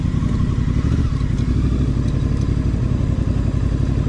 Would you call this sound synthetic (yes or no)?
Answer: no